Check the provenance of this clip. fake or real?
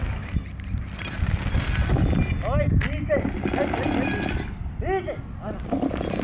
real